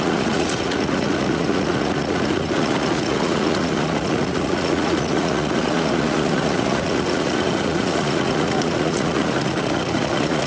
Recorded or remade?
remade